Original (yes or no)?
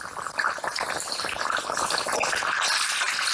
yes